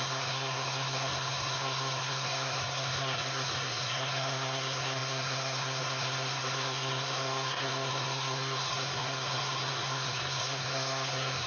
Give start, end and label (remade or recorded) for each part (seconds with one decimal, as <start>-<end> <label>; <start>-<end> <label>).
0.0-11.5 remade